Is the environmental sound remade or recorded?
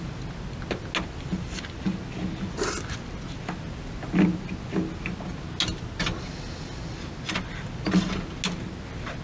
recorded